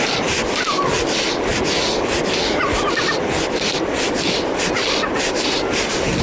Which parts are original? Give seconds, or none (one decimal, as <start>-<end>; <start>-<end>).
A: 0.0-6.2